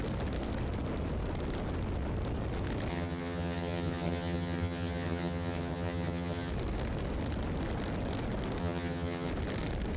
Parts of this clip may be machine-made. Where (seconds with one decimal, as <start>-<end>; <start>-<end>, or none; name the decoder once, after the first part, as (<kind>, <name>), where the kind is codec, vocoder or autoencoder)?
2.9-6.5 (vocoder, HiFi-GAN); 8.6-9.3